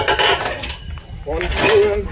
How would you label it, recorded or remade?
recorded